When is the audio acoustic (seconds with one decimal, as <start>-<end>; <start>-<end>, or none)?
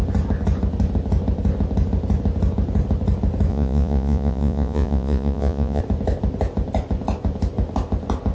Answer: 0.0-3.5; 5.8-8.3